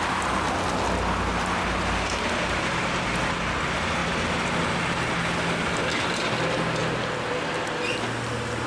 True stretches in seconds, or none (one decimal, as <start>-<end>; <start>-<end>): 0.0-8.7